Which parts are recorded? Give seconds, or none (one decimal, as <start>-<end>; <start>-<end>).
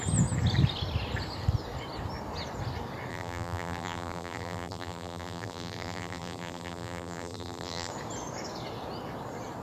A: 0.0-3.1; 7.9-9.6